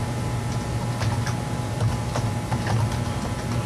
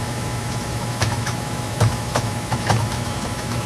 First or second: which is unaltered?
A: first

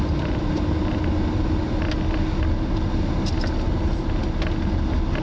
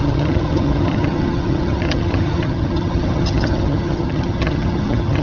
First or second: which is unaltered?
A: first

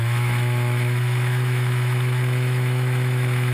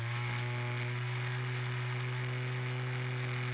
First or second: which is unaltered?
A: second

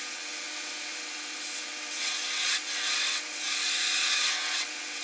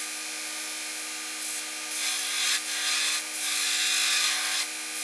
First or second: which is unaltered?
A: second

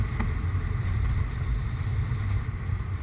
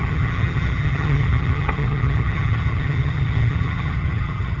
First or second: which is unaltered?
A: first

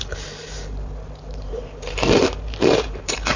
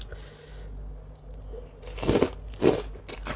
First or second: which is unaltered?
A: second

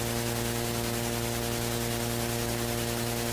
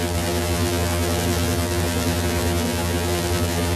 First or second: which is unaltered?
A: first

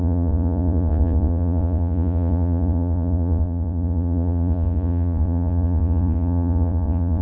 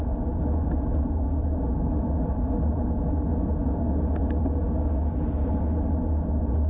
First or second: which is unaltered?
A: second